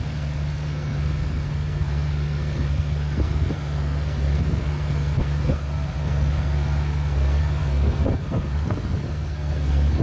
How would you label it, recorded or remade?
remade